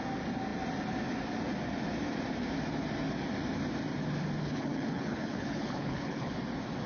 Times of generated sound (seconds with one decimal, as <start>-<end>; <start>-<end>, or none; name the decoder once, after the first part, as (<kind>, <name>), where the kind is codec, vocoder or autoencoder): 4.4-6.3 (codec, HILCodec)